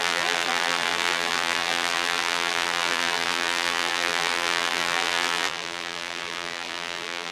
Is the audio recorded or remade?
remade